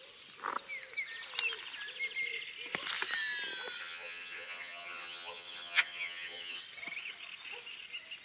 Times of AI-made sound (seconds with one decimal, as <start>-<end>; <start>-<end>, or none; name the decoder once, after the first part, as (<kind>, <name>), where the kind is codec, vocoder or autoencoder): 3.8-6.6 (vocoder, HiFi-GAN)